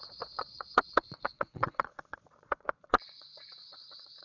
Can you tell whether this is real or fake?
fake